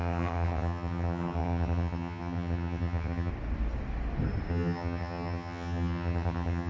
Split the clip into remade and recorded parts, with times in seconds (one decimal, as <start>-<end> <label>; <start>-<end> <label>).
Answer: 0.0-3.3 remade; 3.3-4.5 recorded; 4.5-6.7 remade